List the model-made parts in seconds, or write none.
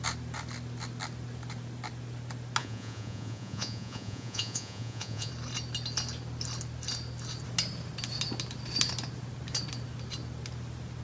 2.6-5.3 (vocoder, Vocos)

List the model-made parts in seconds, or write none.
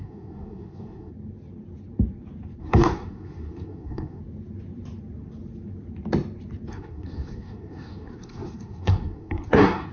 0.0-1.1 (codec, SNAC); 2.6-4.2; 6.7-9.9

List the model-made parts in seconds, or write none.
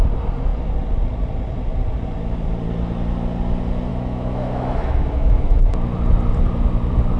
3.9-5.7 (autoencoder, DAC-VAE)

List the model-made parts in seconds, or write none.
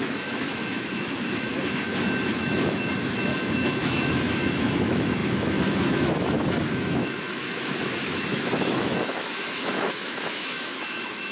0.0-1.5 (autoencoder, DAC-VAE); 2.3-11.3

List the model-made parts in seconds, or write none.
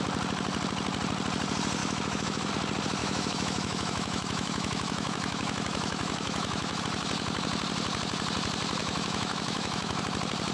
1.8-2.5 (autoencoder, DAC-VAE); 3.0-6.8; 8.8-10.0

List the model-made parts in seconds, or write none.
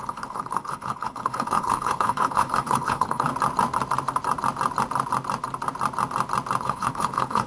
0.0-3.3 (codec, HILCodec); 6.6-7.5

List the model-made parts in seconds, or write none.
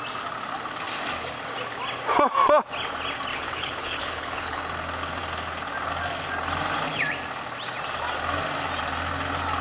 3.3-4.6 (codec, HILCodec)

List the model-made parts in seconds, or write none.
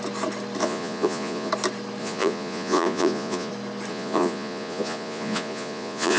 0.6-1.5 (vocoder, Vocos); 2.0-3.5; 3.9-6.2